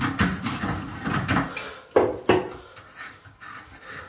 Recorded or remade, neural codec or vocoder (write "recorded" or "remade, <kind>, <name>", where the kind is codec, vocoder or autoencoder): recorded